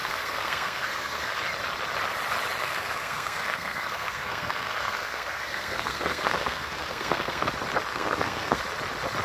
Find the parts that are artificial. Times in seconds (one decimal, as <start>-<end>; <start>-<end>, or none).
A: 0.0-1.4; 2.6-7.5; 7.9-8.6